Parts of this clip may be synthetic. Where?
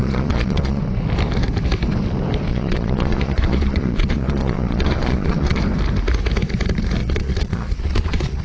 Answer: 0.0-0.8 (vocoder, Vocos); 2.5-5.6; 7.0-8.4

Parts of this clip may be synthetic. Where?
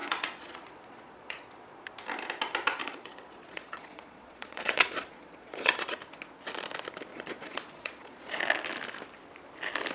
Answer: 0.0-1.8 (vocoder, Vocos); 2.8-6.0; 7.1-8.4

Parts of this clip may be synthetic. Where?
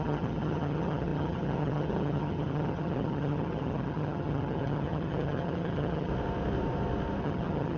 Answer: 0.0-6.1 (vocoder, HiFi-GAN); 7.2-7.8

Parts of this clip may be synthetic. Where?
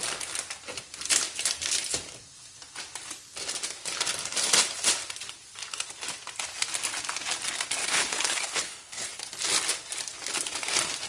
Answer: 7.8-9.2 (codec, HILCodec)